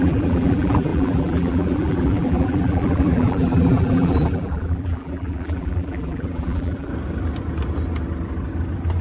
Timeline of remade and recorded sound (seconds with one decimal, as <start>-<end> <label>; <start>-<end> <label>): 0.0-6.9 remade; 6.9-9.0 recorded